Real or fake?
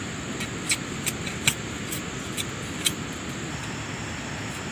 real